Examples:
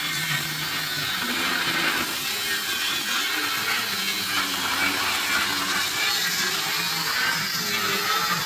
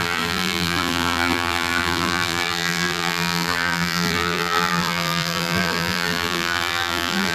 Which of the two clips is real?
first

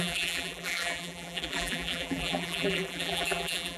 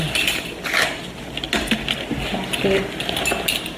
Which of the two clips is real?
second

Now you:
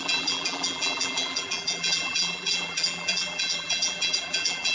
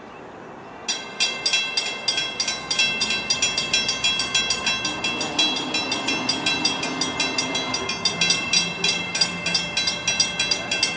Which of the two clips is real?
second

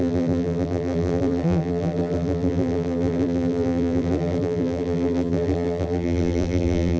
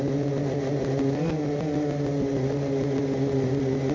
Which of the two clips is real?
second